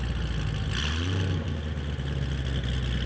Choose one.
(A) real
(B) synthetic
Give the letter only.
A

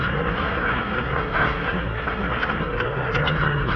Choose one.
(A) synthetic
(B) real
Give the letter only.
A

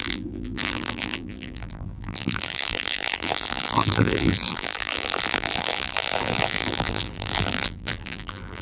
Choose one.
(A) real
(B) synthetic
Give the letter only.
B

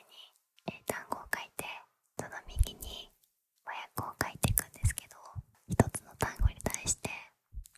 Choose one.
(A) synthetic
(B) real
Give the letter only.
B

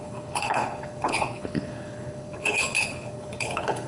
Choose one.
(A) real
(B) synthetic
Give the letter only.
B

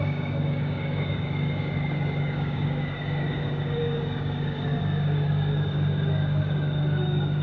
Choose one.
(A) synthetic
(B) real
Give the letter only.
A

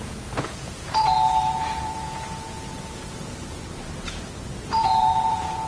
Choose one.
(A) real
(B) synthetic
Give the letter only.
B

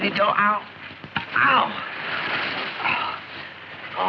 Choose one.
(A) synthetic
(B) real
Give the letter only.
B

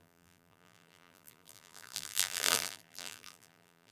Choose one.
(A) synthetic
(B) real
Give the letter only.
A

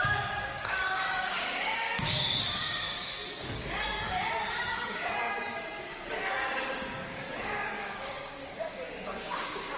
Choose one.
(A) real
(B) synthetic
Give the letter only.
B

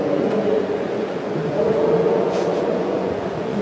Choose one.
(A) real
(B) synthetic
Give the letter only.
B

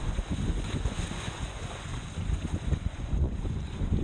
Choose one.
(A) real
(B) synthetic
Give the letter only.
B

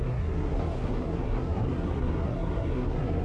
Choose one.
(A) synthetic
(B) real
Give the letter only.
A